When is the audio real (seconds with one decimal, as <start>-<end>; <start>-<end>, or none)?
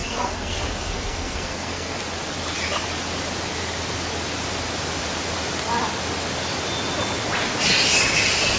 2.0-8.6